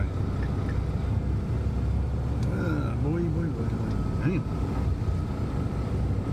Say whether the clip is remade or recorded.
recorded